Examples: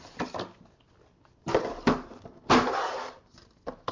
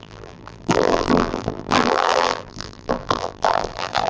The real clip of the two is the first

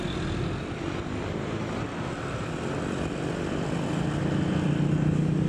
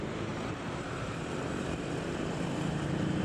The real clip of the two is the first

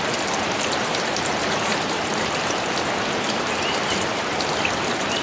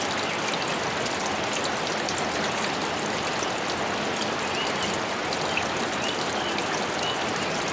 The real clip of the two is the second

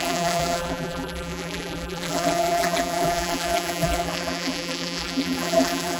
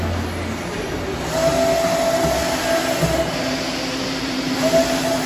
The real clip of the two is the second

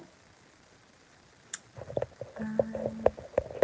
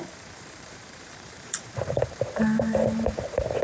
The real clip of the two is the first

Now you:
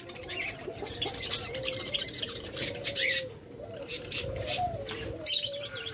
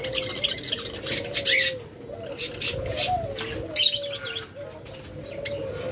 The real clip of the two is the second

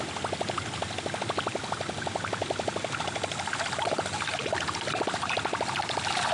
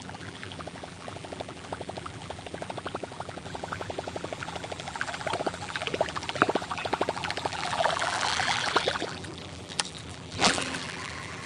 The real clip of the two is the first